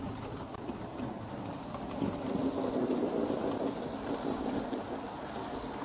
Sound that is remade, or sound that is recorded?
recorded